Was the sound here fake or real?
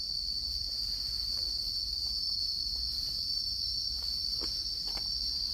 fake